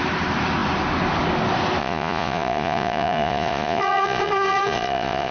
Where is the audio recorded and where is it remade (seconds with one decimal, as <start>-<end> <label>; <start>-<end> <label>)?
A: 0.0-1.8 recorded; 1.8-5.3 remade